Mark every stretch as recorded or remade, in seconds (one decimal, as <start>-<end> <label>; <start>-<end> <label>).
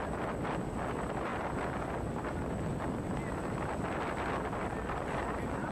0.0-1.3 remade; 1.3-4.7 recorded; 4.7-5.7 remade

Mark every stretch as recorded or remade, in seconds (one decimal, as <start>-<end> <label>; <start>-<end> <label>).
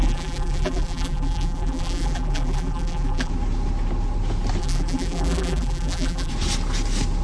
0.0-3.3 remade; 3.3-4.6 recorded; 4.6-6.3 remade; 6.3-7.2 recorded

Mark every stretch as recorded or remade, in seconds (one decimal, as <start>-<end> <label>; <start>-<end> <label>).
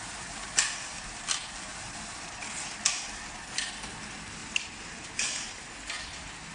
0.0-4.4 recorded; 4.4-5.6 remade; 5.6-6.5 recorded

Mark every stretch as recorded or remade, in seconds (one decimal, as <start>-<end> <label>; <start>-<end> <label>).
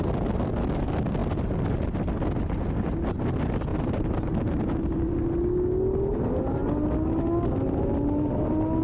0.0-3.7 recorded; 3.7-5.1 remade; 5.1-8.8 recorded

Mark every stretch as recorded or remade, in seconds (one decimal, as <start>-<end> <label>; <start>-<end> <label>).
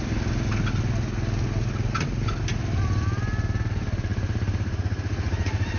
0.0-5.8 recorded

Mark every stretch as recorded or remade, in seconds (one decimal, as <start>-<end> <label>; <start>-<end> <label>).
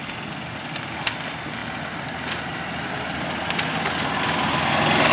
0.0-5.1 recorded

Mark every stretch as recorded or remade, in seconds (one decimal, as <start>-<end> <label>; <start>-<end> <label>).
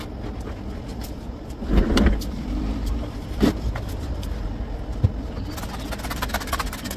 0.0-0.9 recorded; 0.9-4.5 remade; 4.5-7.0 recorded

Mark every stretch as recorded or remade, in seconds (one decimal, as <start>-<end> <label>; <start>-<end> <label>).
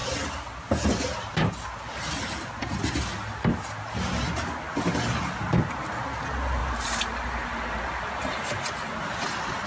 0.0-6.6 recorded; 6.6-8.4 remade; 8.4-9.7 recorded